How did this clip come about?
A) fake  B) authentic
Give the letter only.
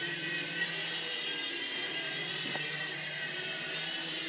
A